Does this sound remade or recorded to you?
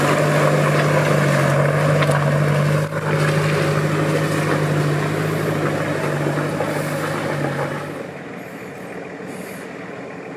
recorded